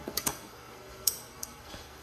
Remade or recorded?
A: remade